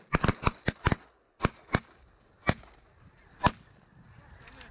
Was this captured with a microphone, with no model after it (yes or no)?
yes